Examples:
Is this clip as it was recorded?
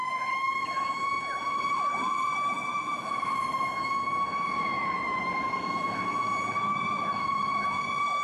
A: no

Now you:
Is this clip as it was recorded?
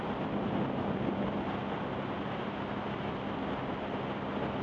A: yes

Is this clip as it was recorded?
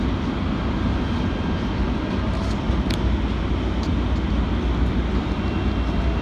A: yes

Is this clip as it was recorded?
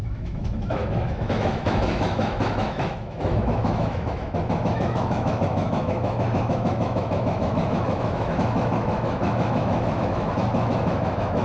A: no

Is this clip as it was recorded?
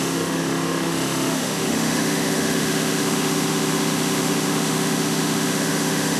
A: no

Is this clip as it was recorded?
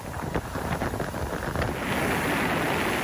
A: yes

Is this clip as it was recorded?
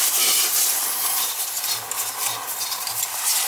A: yes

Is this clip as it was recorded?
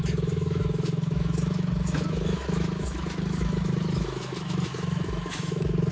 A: no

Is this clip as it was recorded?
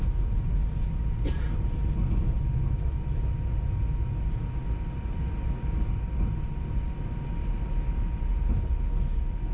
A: yes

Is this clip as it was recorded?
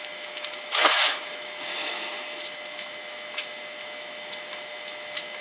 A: no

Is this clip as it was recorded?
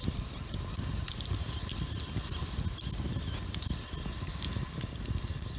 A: yes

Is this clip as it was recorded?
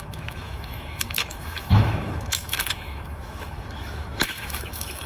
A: no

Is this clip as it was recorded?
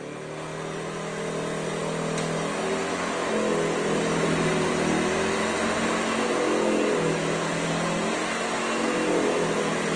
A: yes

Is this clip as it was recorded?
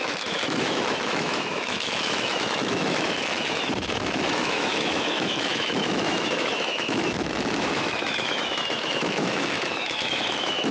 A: no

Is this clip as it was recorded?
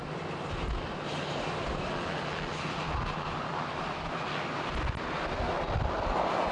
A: yes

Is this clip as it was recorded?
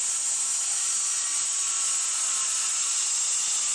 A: yes